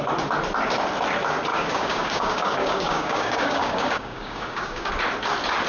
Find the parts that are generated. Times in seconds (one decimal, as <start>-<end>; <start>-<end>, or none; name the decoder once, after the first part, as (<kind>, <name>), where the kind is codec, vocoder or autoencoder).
1.5-4.9 (codec, DAC)